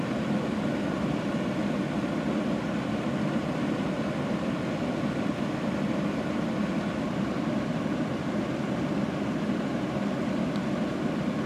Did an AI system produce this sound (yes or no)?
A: no